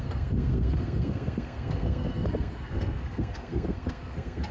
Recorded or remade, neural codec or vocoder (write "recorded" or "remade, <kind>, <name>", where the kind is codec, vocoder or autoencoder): remade, codec, SNAC